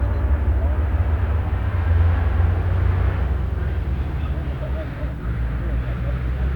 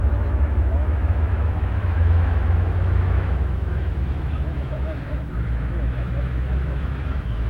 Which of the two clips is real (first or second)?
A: first